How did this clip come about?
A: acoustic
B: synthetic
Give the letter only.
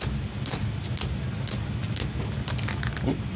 A